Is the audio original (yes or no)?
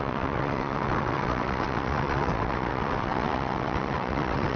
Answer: no